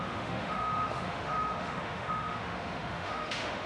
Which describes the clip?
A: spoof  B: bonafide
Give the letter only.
A